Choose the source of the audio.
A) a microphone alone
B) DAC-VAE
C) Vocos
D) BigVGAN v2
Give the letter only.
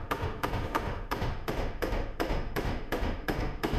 B